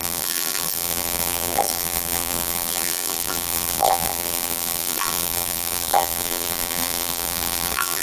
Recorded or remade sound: remade